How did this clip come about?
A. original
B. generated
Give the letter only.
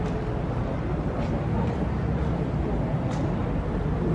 A